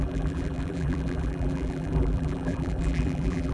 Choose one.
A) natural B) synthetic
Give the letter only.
B